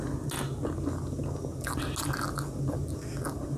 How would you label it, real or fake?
real